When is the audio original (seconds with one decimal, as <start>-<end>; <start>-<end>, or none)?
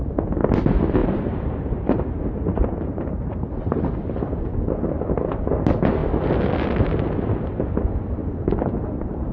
0.0-1.0; 3.9-9.3